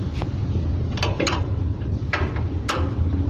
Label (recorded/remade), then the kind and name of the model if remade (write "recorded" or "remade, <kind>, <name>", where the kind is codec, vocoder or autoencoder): remade, vocoder, BigVGAN v2